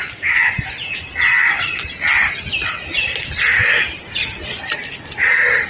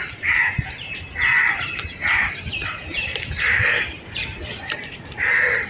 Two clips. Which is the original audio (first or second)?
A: first